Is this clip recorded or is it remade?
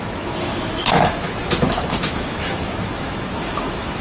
remade